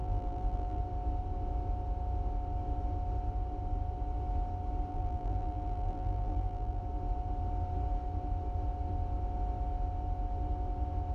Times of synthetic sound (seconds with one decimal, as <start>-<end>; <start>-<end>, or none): 0.0-0.8; 4.9-6.8